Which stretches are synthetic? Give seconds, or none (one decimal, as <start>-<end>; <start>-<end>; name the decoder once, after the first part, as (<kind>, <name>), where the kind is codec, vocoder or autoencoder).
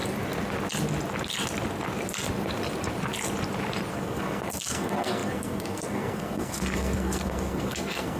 3.9-8.2 (codec, SNAC)